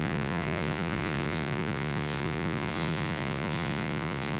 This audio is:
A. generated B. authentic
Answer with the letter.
A